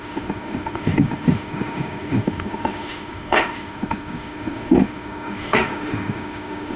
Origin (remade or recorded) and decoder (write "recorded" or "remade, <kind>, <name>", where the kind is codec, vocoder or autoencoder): remade, autoencoder, DAC-VAE